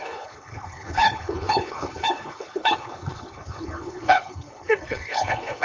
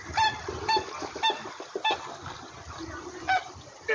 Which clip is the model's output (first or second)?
first